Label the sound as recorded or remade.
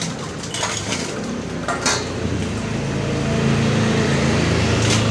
recorded